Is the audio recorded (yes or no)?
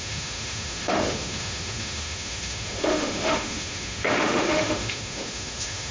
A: no